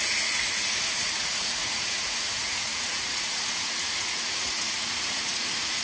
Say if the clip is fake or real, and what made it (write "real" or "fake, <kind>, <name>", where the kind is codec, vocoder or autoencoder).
fake, vocoder, Vocos